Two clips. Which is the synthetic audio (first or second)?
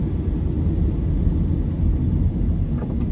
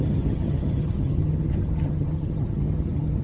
second